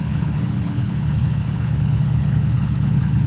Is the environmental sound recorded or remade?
remade